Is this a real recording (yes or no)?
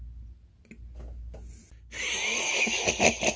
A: yes